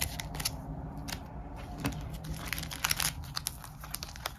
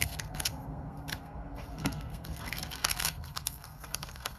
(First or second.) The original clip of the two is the first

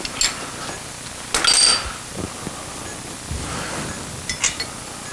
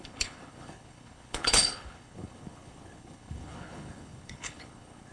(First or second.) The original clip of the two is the first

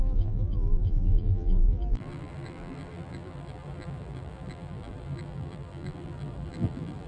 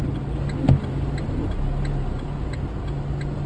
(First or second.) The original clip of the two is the second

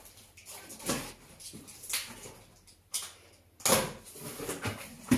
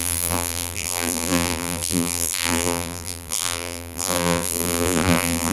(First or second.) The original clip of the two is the first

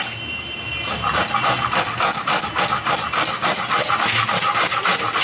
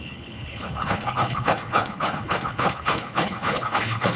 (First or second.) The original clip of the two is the first